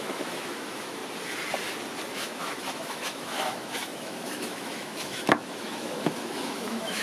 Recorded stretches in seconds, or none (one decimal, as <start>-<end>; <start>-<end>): 1.0-2.1